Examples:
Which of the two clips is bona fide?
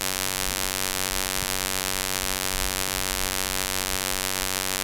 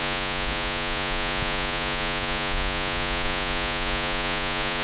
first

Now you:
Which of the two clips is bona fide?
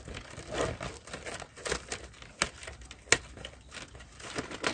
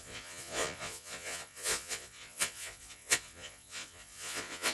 first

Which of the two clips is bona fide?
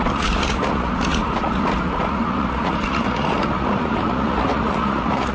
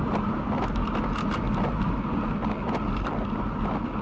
second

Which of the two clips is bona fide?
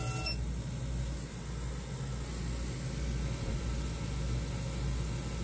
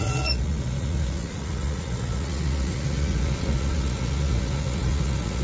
first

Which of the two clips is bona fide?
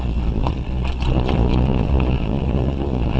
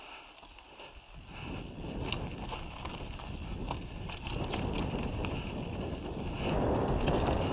second